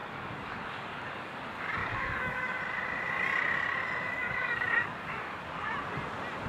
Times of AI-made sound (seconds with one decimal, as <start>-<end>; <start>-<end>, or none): 0.0-1.4; 1.8-2.6; 4.2-5.7